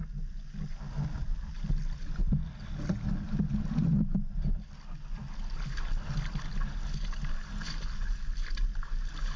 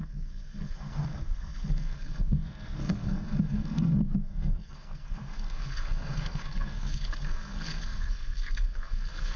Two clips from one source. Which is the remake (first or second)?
second